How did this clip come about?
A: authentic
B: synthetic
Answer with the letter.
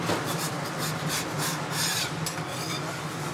A